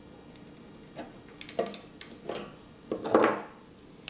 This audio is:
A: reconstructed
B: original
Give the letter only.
B